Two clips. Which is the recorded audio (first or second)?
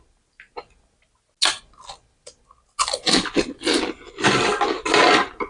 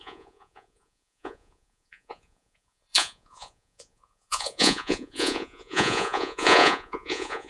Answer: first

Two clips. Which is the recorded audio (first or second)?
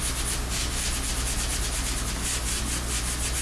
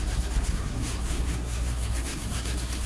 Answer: first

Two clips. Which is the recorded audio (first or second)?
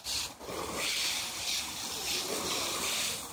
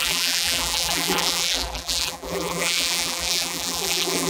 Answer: first